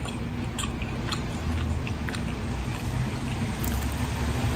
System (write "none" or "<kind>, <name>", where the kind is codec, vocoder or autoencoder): none